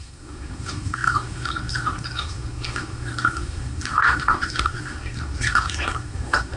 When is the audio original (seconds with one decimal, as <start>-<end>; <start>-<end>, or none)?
none